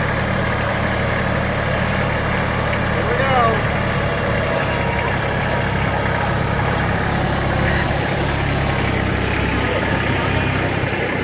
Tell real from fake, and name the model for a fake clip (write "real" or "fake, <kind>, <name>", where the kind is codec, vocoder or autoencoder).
real